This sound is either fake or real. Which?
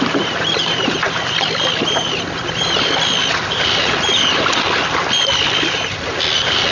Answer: fake